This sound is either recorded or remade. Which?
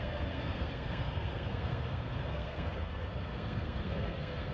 remade